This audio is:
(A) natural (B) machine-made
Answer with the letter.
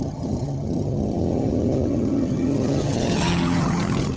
B